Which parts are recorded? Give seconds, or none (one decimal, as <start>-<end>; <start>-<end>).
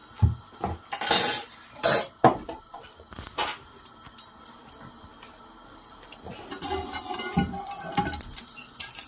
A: 0.0-9.1